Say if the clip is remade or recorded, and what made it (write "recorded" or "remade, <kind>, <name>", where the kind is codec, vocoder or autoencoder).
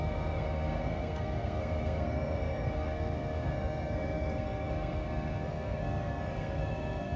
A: remade, codec, SNAC